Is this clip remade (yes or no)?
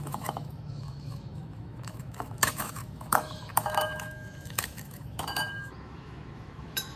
yes